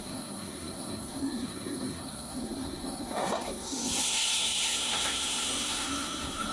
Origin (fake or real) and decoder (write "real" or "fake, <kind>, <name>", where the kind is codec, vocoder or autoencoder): fake, codec, SNAC